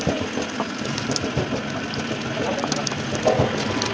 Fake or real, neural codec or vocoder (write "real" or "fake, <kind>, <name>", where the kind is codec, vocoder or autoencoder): real